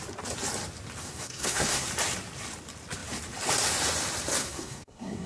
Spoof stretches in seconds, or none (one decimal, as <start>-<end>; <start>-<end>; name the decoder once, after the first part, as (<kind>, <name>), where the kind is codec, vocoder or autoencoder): 1.0-1.8 (codec, SNAC); 4.4-5.3